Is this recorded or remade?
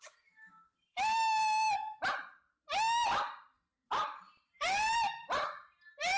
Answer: remade